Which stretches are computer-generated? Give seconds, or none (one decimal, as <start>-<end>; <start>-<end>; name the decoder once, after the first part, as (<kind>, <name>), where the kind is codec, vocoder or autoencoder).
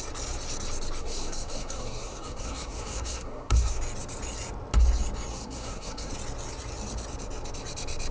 1.0-3.8 (codec, SNAC); 5.3-6.1